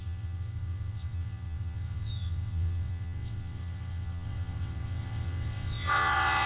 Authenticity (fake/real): fake